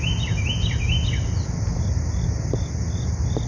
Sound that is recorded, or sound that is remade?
recorded